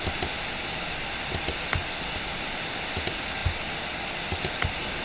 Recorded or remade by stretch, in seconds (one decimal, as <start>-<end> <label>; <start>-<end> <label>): 0.0-5.0 recorded